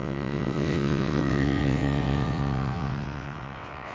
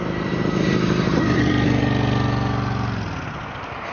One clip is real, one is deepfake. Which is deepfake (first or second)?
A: first